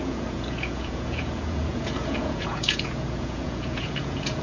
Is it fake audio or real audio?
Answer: fake